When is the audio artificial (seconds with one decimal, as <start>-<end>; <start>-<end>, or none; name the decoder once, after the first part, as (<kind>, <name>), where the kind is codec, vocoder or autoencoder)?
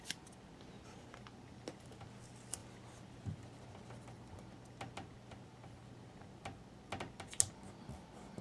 none